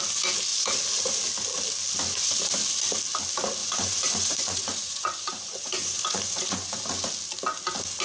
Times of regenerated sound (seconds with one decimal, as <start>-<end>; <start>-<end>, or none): 3.6-6.8